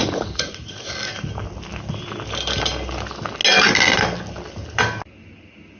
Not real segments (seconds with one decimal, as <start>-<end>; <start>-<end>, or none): 0.0-0.9